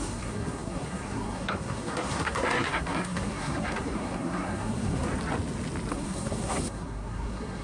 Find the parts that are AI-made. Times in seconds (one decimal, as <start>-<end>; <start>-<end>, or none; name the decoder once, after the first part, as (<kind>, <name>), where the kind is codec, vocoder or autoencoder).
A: 0.0-5.1 (codec, SNAC); 5.9-7.6